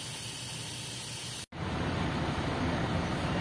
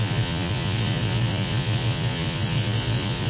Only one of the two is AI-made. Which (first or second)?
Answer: second